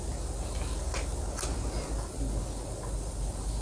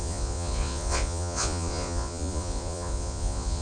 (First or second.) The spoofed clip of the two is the second